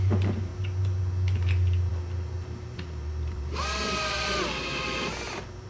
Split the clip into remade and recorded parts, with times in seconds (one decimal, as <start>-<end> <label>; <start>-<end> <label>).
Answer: 0.0-0.5 remade; 0.5-1.9 recorded; 1.9-5.7 remade